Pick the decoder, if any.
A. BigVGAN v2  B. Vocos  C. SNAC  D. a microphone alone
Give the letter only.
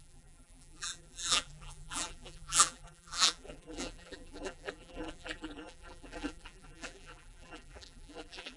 A